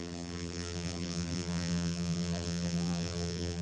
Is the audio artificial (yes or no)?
yes